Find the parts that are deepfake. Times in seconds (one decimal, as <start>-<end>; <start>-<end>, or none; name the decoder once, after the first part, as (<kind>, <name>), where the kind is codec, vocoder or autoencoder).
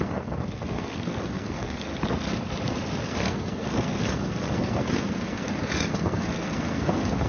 0.0-1.9 (codec, SNAC); 3.0-7.3